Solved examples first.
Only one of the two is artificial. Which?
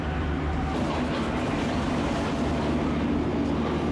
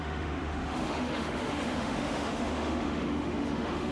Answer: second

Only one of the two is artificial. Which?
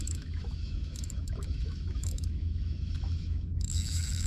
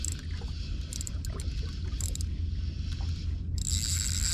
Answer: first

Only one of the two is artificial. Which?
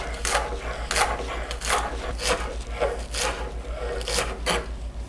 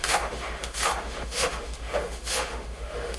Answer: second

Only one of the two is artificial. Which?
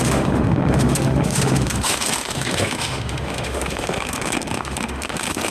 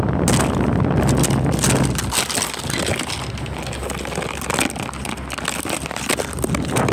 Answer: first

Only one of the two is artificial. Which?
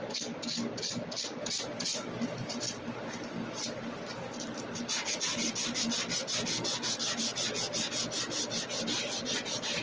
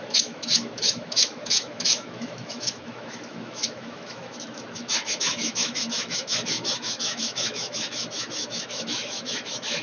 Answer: second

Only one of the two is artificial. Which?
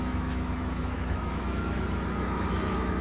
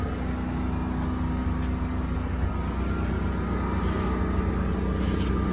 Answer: first